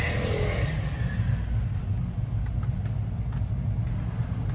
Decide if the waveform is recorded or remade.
recorded